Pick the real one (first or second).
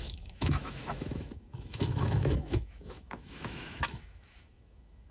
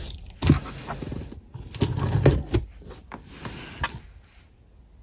second